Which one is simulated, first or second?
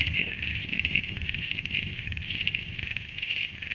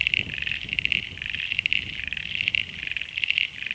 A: first